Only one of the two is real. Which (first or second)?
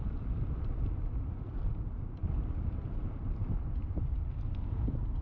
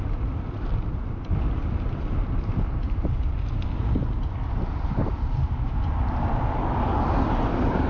second